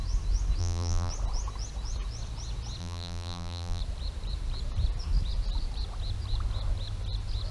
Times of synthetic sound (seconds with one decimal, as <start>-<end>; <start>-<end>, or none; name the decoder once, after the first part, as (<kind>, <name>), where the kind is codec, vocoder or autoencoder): 0.6-1.1 (vocoder, BigVGAN v2); 2.8-3.8